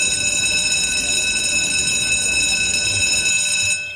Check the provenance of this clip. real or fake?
real